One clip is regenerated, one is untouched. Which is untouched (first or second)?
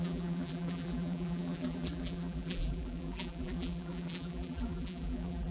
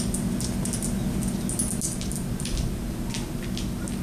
second